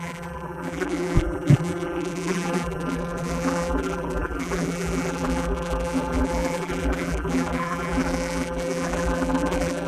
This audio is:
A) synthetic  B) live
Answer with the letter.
A